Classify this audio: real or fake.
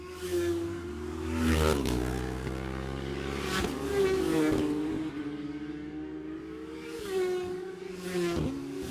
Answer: fake